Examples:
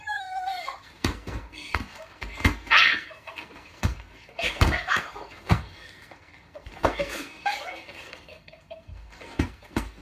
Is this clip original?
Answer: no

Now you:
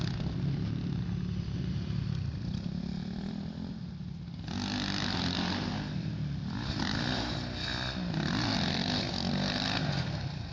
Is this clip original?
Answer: yes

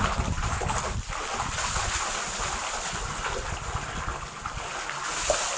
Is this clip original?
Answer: yes